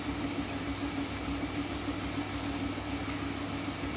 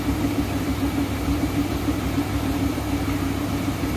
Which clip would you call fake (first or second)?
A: second